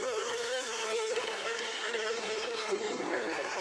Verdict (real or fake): fake